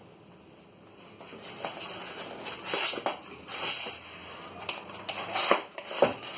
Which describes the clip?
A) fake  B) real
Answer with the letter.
B